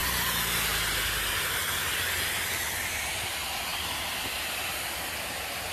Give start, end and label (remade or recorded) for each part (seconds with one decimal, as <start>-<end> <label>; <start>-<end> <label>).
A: 0.0-5.7 recorded